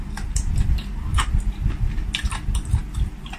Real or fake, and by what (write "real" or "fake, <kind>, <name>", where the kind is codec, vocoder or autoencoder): real